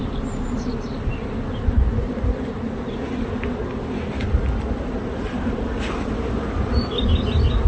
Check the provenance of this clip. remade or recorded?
recorded